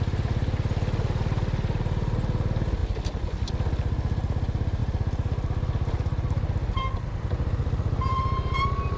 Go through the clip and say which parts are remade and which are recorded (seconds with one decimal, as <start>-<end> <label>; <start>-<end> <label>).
0.0-9.0 recorded